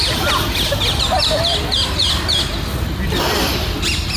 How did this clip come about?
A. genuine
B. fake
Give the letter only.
A